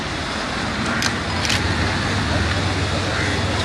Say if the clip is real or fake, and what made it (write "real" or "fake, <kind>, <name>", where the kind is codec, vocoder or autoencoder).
real